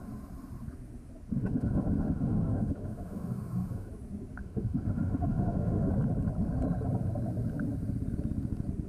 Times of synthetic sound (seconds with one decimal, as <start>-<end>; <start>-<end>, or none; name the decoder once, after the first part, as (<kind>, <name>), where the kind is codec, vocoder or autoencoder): 1.3-3.9 (autoencoder, DAC-VAE); 4.4-5.9